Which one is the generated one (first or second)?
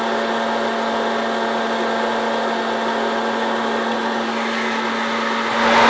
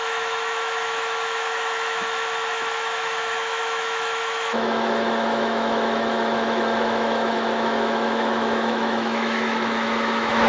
second